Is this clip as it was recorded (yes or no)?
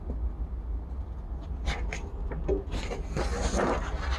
yes